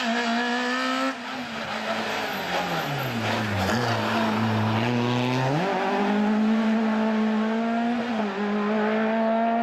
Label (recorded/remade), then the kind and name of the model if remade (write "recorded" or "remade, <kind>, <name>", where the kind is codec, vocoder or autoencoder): recorded